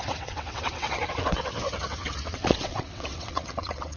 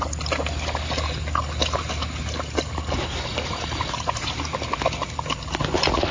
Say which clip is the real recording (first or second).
second